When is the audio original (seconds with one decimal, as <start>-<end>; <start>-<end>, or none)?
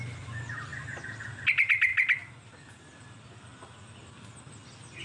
0.0-5.0